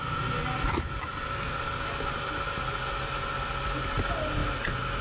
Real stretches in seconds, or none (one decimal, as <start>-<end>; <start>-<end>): 0.0-5.0